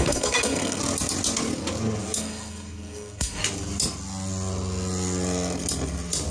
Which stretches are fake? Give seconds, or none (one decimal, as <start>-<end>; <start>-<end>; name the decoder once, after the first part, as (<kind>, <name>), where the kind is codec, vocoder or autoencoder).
0.0-0.8 (codec, SNAC); 2.2-3.4